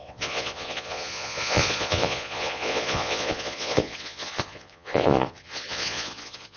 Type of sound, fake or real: fake